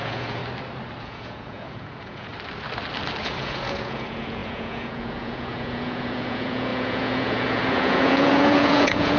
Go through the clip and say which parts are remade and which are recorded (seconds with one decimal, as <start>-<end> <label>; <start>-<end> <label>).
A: 0.0-0.4 remade; 0.4-1.0 recorded; 1.0-2.3 remade; 2.3-3.2 recorded; 3.2-9.2 remade